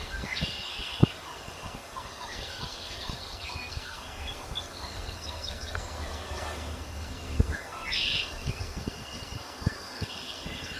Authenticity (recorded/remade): remade